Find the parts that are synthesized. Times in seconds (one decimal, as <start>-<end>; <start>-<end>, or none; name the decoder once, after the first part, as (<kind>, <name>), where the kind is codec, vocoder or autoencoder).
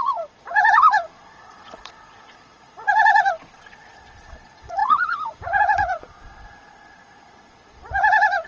0.0-8.5 (vocoder, Vocos)